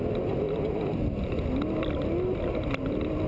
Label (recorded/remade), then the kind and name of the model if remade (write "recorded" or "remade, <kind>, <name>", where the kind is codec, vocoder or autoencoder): recorded